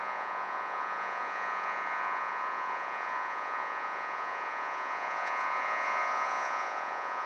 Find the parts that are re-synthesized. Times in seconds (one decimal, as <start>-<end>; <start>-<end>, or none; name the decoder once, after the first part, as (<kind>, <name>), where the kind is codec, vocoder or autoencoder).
0.0-7.3 (vocoder, Vocos)